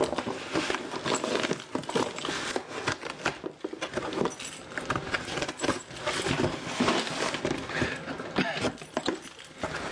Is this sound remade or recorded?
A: recorded